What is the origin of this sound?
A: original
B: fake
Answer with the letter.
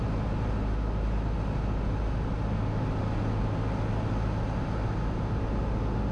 A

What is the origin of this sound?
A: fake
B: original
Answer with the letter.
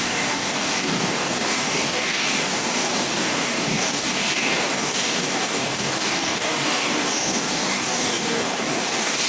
A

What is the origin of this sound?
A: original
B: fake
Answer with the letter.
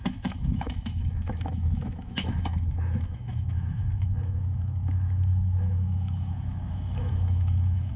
B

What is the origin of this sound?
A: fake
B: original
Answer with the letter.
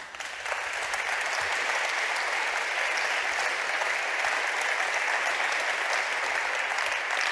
B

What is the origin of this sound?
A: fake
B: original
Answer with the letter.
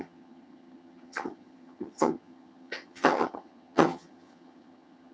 A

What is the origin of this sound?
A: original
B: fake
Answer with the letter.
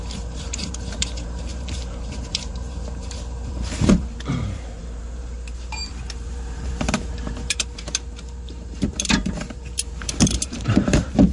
B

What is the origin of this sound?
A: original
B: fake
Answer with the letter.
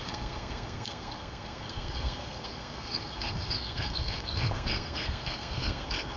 B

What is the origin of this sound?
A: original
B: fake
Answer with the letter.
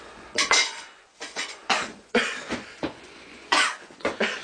B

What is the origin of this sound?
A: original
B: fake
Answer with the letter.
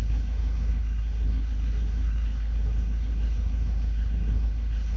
B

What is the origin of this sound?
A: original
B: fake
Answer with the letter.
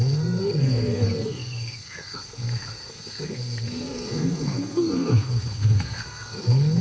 B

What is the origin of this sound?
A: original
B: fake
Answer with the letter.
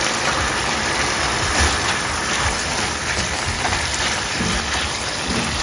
B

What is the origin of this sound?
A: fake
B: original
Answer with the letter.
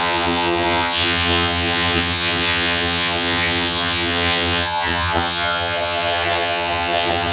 A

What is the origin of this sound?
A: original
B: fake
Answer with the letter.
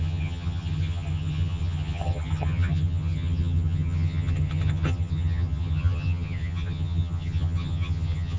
B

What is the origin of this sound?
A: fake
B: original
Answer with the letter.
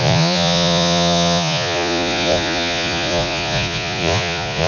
A